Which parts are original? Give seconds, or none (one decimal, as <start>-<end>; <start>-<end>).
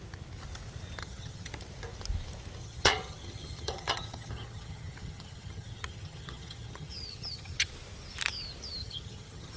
0.0-1.0; 1.5-2.6; 7.7-8.8